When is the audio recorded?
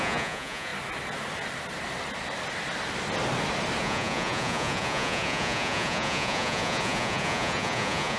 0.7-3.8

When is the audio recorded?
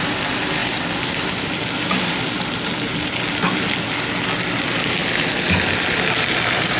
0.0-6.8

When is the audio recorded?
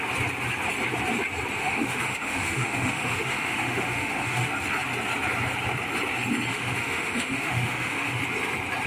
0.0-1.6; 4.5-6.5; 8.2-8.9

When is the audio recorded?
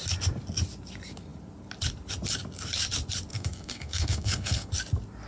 0.0-3.3; 4.7-5.3